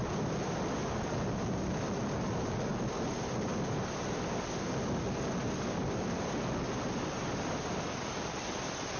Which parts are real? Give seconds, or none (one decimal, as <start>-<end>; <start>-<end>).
0.0-9.0